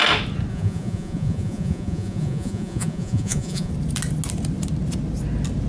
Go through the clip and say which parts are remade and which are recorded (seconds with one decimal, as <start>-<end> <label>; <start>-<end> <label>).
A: 0.0-0.5 recorded; 0.5-3.7 remade; 3.7-5.7 recorded